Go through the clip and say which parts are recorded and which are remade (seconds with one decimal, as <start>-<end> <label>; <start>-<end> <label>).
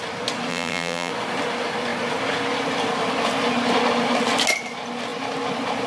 0.0-0.5 recorded; 0.5-1.1 remade; 1.1-5.9 recorded